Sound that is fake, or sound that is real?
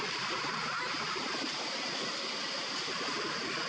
real